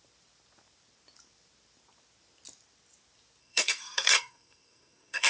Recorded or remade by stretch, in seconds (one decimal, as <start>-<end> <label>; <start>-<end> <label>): 0.0-3.4 recorded; 3.4-5.3 remade

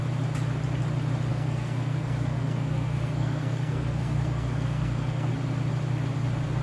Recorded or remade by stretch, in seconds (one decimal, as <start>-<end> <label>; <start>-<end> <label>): 0.0-1.3 recorded; 1.3-5.3 remade; 5.3-6.6 recorded

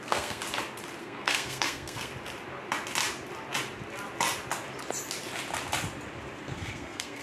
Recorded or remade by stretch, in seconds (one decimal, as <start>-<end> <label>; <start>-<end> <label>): 0.0-0.4 remade; 0.4-1.0 recorded; 1.0-2.1 remade; 2.1-6.4 recorded; 6.4-7.2 remade

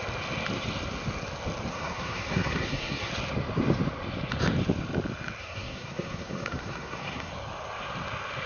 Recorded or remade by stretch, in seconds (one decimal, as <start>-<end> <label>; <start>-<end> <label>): 0.0-1.7 recorded; 1.7-3.1 remade; 3.1-5.4 recorded; 5.4-7.3 remade; 7.3-8.5 recorded

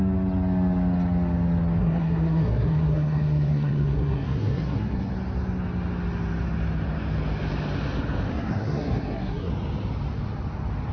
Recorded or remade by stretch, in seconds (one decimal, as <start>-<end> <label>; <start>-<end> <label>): 0.0-1.8 recorded; 1.8-5.1 remade; 5.1-8.3 recorded; 8.3-9.5 remade; 9.5-10.9 recorded

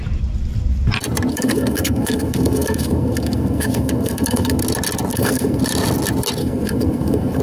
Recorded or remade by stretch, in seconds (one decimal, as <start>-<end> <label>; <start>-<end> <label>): 0.0-1.3 recorded; 1.3-4.6 remade; 4.6-5.1 recorded; 5.1-5.6 remade; 5.6-6.4 recorded; 6.4-7.4 remade